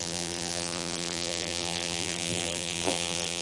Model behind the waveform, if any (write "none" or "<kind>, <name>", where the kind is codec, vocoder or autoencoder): vocoder, BigVGAN v2